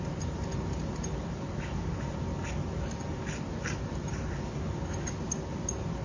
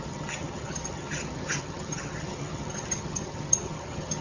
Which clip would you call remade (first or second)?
second